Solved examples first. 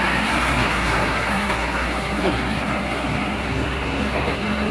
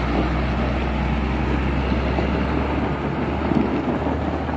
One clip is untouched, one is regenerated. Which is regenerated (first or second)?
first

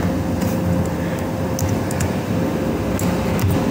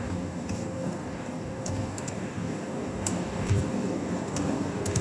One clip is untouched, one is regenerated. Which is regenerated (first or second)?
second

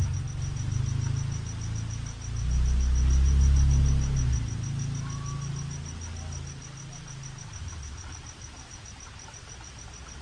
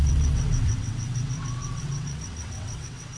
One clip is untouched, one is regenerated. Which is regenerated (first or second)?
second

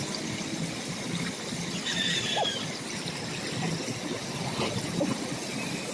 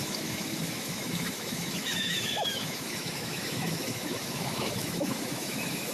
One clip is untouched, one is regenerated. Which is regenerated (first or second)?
second